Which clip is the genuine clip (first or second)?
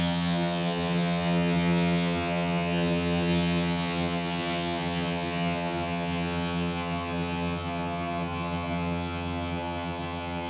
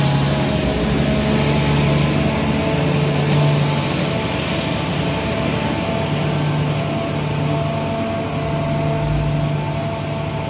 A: second